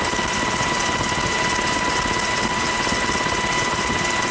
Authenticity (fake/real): real